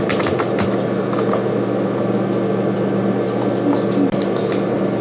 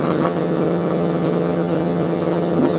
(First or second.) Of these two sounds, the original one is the first